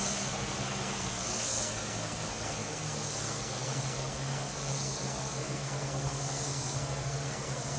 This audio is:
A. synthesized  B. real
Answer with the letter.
A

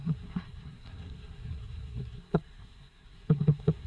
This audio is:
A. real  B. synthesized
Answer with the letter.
B